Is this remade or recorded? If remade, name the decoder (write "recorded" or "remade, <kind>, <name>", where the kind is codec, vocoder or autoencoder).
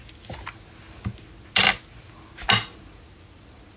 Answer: recorded